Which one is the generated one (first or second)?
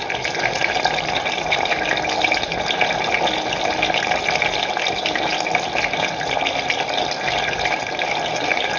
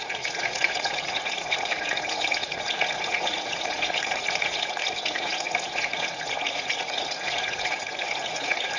second